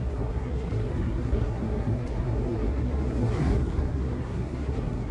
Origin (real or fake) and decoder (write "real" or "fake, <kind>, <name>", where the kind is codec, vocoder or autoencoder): fake, codec, SNAC